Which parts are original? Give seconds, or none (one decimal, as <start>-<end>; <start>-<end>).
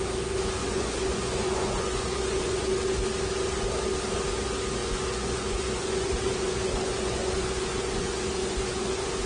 0.0-0.6; 2.6-4.8